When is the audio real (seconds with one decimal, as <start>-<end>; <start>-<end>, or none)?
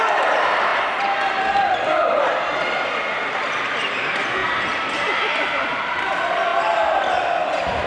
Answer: 0.0-7.9